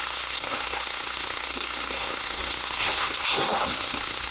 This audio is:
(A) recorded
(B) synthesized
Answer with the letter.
B